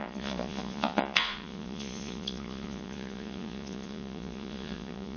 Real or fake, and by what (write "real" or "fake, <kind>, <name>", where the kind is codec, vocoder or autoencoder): fake, vocoder, Vocos